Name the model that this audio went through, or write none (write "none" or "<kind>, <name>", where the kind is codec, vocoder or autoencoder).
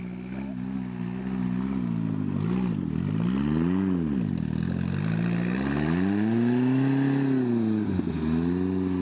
none